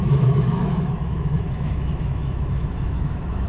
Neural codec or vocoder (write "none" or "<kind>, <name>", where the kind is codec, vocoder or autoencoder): autoencoder, DAC-VAE